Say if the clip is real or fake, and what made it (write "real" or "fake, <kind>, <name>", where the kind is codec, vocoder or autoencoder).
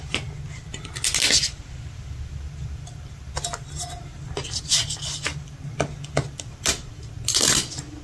real